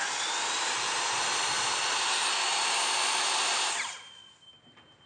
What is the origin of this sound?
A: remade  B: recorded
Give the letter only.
B